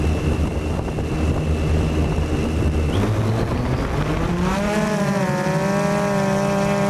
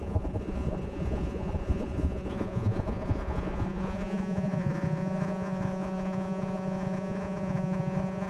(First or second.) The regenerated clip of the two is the second